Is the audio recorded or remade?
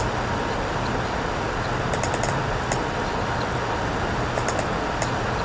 recorded